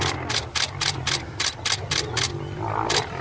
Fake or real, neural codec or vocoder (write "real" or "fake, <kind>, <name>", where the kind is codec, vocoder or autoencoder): real